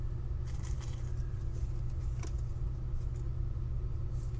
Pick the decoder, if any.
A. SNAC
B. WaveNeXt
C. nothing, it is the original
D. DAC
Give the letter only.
C